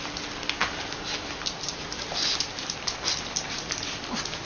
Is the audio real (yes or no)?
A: yes